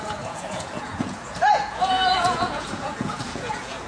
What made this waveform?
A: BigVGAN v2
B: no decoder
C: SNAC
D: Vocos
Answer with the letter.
D